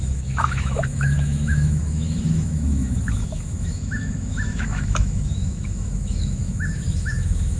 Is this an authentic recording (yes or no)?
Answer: no